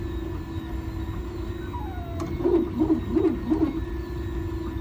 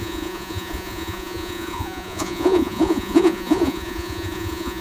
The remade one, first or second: second